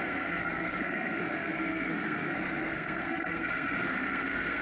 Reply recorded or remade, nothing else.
remade